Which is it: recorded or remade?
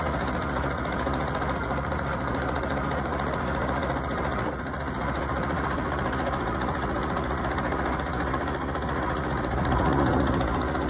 remade